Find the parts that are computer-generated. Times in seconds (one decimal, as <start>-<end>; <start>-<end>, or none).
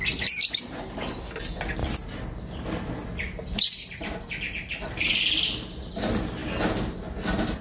none